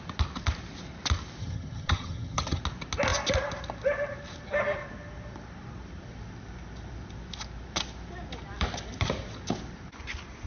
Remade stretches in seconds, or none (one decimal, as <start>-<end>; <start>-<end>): 1.4-2.6